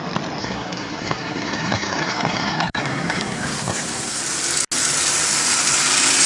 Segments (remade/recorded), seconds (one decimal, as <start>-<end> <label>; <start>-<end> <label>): 0.0-0.4 recorded; 0.4-4.2 remade; 4.2-6.3 recorded